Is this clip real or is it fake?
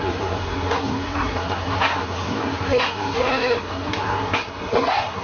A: fake